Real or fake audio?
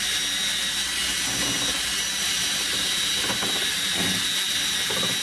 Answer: real